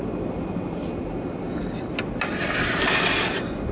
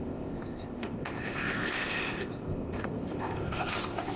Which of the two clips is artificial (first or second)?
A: second